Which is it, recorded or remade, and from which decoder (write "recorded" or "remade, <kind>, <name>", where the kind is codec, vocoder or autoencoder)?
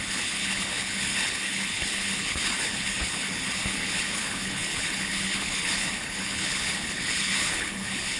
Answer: remade, codec, HILCodec